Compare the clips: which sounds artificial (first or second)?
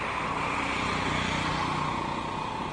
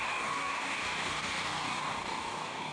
second